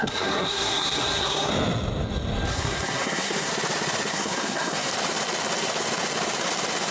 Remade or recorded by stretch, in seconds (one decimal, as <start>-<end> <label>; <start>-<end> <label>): 0.0-1.5 remade; 1.5-2.5 recorded; 2.5-3.5 remade; 3.5-4.1 recorded; 4.1-4.9 remade; 4.9-6.9 recorded